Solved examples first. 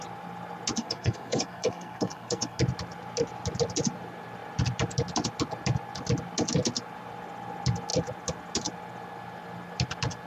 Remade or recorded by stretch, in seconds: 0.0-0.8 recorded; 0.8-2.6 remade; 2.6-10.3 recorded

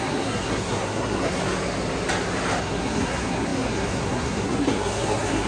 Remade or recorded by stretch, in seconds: 0.0-1.4 remade; 1.4-2.6 recorded; 2.6-5.5 remade

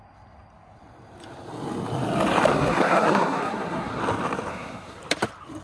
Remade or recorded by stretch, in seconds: 0.0-2.5 recorded; 2.5-4.0 remade; 4.0-4.5 recorded; 4.5-5.0 remade; 5.0-5.6 recorded

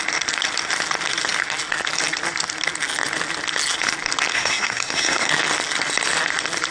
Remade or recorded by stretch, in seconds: 0.0-4.3 recorded; 4.3-5.3 remade; 5.3-6.7 recorded